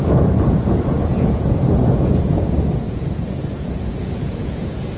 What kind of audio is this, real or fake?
fake